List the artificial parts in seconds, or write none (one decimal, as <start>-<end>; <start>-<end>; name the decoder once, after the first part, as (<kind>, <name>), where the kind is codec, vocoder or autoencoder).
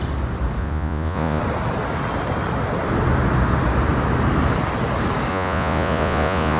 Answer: 0.6-1.4 (vocoder, Vocos); 5.3-6.6